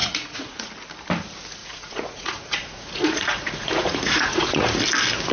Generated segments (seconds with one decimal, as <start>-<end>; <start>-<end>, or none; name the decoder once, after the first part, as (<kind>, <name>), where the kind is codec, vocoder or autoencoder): 0.0-0.7 (vocoder, Vocos); 1.6-4.8